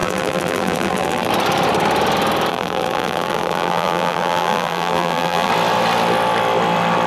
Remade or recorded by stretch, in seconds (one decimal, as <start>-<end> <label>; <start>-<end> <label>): 0.0-1.3 remade; 1.3-2.5 recorded; 2.5-5.5 remade; 5.5-7.1 recorded